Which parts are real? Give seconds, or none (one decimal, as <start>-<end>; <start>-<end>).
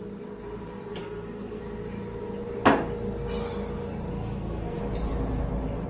0.0-1.0; 1.6-4.1; 4.8-5.9